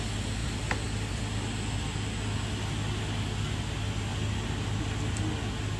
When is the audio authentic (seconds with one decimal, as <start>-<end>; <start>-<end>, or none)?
0.0-0.4; 1.1-4.1; 4.8-5.8